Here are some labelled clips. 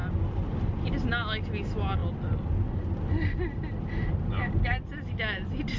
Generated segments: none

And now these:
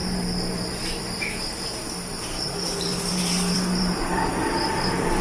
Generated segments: 0.0-5.2 (vocoder, BigVGAN v2)

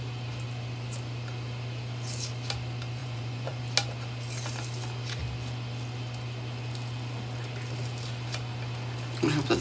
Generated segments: 3.0-3.6 (vocoder, Vocos)

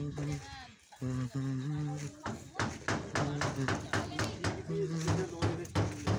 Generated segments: none

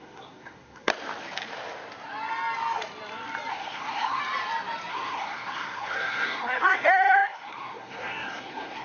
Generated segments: 0.0-0.9 (codec, SNAC); 3.5-4.2; 4.9-8.8